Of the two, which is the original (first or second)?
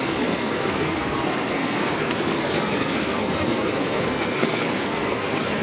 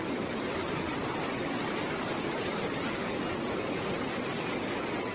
second